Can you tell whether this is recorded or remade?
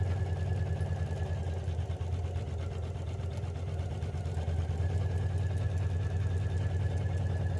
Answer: recorded